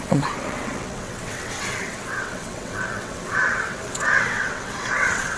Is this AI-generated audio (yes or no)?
yes